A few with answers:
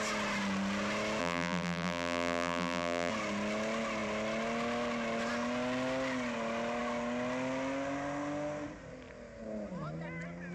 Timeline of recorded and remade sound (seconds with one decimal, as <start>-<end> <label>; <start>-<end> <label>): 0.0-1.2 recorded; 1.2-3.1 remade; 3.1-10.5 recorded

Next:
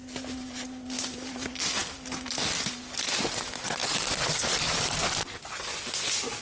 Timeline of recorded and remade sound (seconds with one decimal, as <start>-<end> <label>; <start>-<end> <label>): 0.0-3.8 recorded; 3.8-5.1 remade; 5.1-6.4 recorded

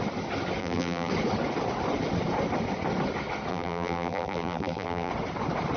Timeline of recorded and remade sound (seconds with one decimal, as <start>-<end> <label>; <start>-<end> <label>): 0.0-0.6 recorded; 0.6-1.1 remade; 1.1-3.5 recorded; 3.5-5.1 remade; 5.1-5.8 recorded

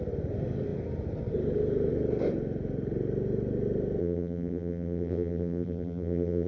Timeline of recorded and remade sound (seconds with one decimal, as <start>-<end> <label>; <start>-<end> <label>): 0.0-4.0 recorded; 4.0-6.5 remade

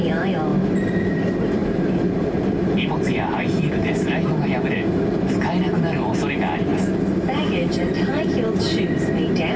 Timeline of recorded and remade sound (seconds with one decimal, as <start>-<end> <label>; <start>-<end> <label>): 0.0-0.5 remade; 0.5-1.0 recorded; 1.0-6.7 remade; 6.7-7.3 recorded; 7.3-9.6 remade

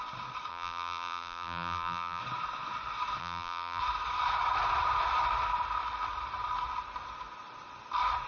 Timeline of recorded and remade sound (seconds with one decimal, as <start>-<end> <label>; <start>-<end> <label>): 0.0-0.5 recorded; 0.5-2.2 remade; 2.2-3.2 recorded; 3.2-3.8 remade; 3.8-8.3 recorded